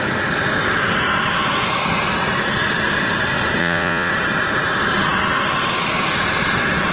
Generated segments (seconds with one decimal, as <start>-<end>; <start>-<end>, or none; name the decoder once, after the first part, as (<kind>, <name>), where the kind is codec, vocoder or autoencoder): 3.6-4.1 (vocoder, Vocos)